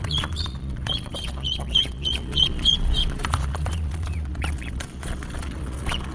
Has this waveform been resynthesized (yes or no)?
yes